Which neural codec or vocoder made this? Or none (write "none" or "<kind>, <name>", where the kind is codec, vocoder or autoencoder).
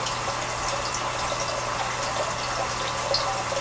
none